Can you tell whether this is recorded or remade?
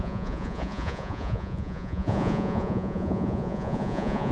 remade